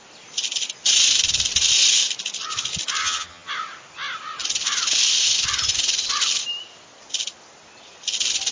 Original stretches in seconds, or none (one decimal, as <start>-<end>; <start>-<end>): 0.0-3.0; 3.5-8.5